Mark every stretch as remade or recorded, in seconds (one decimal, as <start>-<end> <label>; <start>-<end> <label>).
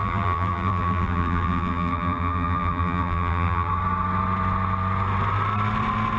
0.0-3.7 remade; 3.7-6.2 recorded